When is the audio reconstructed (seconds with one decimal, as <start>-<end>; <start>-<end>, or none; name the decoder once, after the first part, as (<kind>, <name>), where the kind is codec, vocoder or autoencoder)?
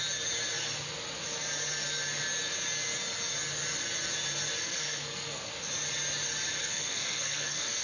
4.6-5.5 (codec, SNAC); 6.6-7.8